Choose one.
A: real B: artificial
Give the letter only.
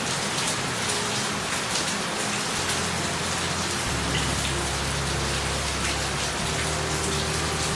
A